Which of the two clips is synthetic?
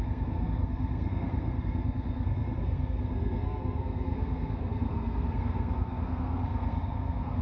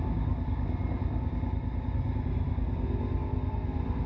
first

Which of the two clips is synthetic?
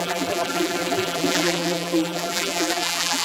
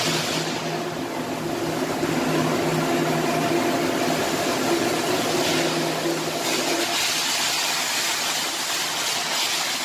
first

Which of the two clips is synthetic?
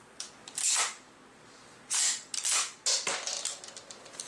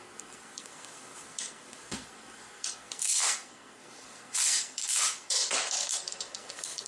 second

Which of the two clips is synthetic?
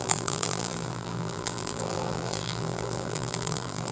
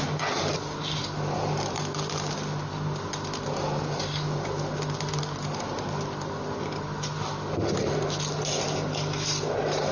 first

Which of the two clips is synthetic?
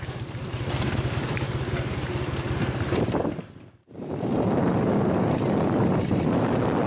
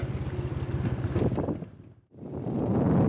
first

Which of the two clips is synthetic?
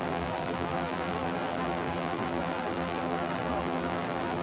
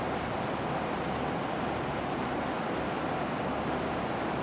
first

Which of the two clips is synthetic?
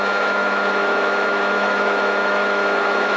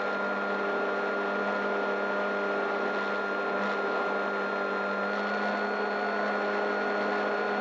first